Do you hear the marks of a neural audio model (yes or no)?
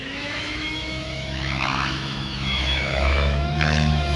yes